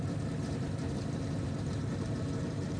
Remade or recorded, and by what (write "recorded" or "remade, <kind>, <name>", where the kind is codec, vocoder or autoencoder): remade, vocoder, BigVGAN v2